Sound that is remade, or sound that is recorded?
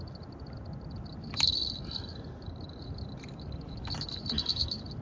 recorded